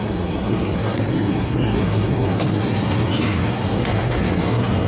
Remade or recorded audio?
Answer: remade